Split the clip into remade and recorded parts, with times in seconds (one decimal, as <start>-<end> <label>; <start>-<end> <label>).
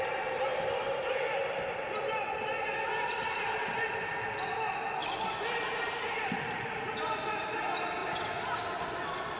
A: 0.0-5.0 recorded; 5.0-6.9 remade; 6.9-9.4 recorded